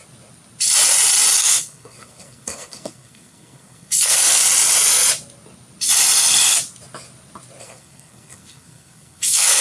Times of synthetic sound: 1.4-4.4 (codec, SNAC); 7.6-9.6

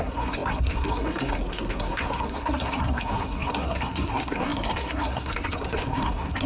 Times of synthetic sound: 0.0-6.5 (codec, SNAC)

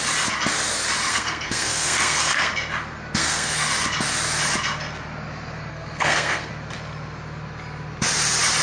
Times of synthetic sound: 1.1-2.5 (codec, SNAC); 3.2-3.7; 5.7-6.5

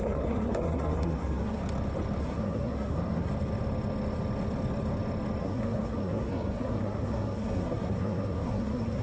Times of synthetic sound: 0.0-1.6 (codec, SNAC); 2.2-3.3; 5.4-9.0

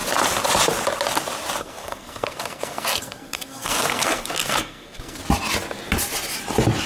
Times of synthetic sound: 1.6-5.2 (codec, SNAC)

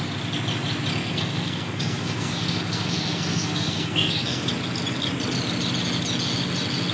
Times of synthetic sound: 1.0-4.5 (codec, SNAC)